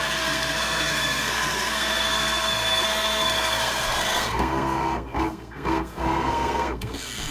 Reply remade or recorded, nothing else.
remade